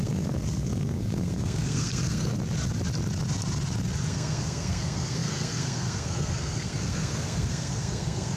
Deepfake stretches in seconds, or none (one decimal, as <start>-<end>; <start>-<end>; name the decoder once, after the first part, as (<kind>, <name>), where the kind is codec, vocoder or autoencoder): 0.0-2.3 (codec, SNAC); 4.1-8.4